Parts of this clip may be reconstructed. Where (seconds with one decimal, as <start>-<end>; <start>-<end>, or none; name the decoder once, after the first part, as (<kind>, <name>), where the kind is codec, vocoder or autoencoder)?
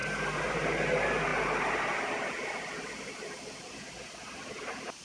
none